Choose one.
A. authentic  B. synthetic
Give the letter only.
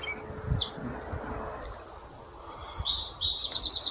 A